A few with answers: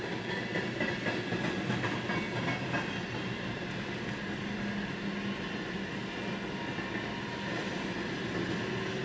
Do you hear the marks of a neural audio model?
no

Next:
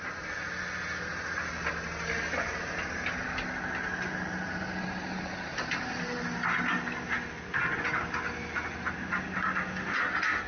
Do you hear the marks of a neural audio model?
no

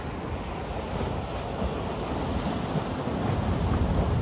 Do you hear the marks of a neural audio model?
no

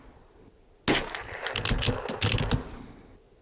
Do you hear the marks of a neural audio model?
no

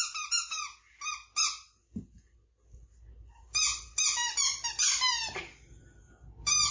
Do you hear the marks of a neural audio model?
no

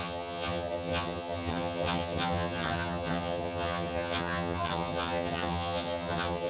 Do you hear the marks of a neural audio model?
yes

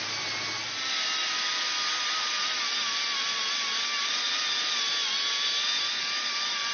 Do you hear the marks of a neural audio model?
no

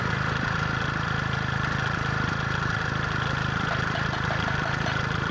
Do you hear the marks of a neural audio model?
no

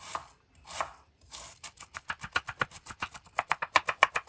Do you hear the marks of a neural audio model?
no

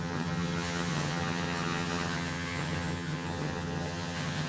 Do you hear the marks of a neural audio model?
yes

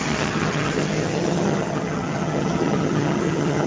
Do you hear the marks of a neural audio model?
yes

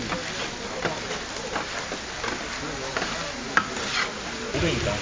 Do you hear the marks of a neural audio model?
no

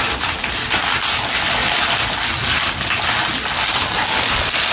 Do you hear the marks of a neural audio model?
no